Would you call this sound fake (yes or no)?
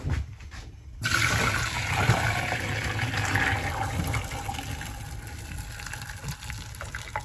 no